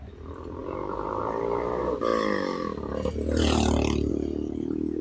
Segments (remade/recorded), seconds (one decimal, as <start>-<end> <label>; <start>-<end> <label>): 0.0-0.6 recorded; 0.6-1.2 remade; 1.2-5.0 recorded

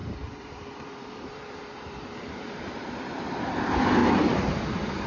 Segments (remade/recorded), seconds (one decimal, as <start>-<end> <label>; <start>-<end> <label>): 0.0-3.1 remade; 3.1-4.0 recorded; 4.0-5.1 remade

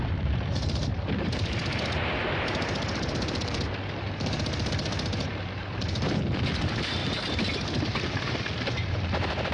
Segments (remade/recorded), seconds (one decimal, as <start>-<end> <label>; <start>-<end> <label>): 0.0-9.5 remade

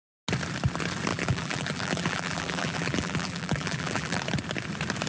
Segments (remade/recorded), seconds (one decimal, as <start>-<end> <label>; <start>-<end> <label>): 0.0-1.1 recorded; 1.1-4.2 remade; 4.2-5.1 recorded

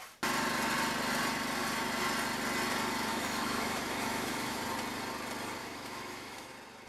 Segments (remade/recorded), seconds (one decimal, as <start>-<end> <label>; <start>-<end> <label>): 0.0-3.1 recorded; 3.1-4.6 remade; 4.6-5.6 recorded; 5.6-6.5 remade; 6.5-6.9 recorded

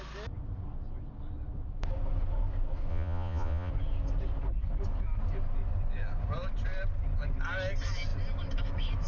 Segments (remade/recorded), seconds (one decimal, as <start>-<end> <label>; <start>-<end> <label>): 0.0-2.9 recorded; 2.9-3.7 remade; 3.7-9.1 recorded

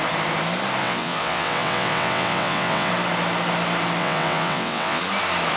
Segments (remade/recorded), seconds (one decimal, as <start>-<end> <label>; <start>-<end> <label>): 0.0-0.8 recorded; 0.8-2.9 remade; 2.9-4.0 recorded; 4.0-5.0 remade; 5.0-5.6 recorded